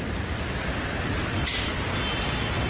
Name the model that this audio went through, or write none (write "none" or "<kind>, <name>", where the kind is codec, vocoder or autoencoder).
none